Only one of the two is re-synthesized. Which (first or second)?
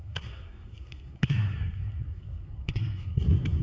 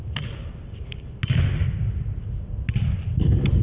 first